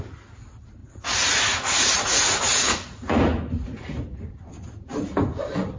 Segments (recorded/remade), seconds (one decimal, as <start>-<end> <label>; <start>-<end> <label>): 0.0-0.8 recorded; 0.8-4.3 remade; 4.3-5.8 recorded